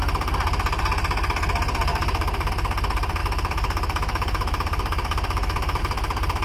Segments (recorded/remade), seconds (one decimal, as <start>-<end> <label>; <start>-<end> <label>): 0.0-1.9 recorded; 1.9-2.5 remade; 2.5-3.2 recorded; 3.2-5.8 remade; 5.8-6.4 recorded

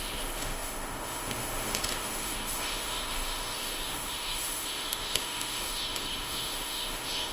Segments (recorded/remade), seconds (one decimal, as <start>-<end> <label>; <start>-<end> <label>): 0.0-7.3 remade

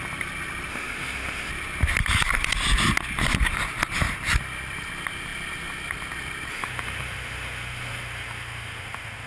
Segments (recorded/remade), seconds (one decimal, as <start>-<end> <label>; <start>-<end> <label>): 0.0-0.7 recorded; 0.7-1.5 remade; 1.5-6.5 recorded; 6.5-9.3 remade

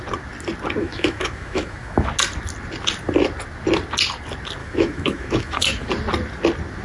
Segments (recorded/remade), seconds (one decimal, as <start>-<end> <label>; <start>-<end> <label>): 0.0-0.8 recorded; 0.8-2.1 remade; 2.1-4.6 recorded; 4.6-5.9 remade; 5.9-6.8 recorded

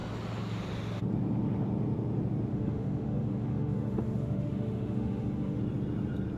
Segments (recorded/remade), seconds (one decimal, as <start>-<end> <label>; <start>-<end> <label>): 0.0-2.5 recorded; 2.5-5.6 remade; 5.6-6.4 recorded

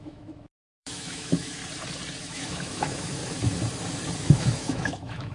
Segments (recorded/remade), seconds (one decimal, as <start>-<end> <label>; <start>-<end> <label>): 0.0-1.6 remade; 1.6-2.2 recorded; 2.2-3.2 remade; 3.2-4.2 recorded; 4.2-5.3 remade

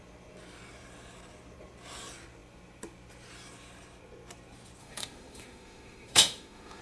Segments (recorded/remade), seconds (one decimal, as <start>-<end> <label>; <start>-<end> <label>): 0.0-4.8 recorded; 4.8-6.8 remade

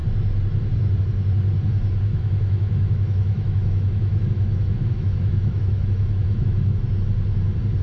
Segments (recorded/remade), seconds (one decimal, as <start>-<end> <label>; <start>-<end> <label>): 0.0-2.1 recorded; 2.1-6.8 remade; 6.8-7.8 recorded